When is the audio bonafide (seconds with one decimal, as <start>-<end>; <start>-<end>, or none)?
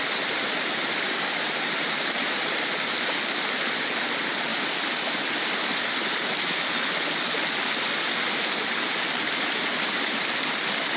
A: 0.0-11.0